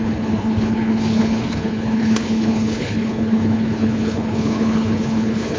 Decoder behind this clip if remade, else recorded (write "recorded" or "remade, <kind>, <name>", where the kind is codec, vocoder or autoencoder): remade, codec, HILCodec